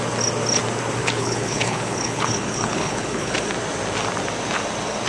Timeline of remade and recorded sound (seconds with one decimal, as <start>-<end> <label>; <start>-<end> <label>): 0.0-1.0 recorded; 1.0-3.4 remade; 3.4-5.1 recorded